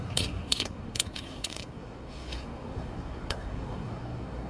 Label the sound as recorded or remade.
remade